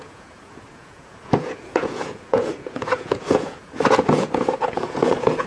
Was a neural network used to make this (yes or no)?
yes